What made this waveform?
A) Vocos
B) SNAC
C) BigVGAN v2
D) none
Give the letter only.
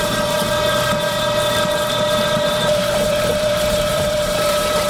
C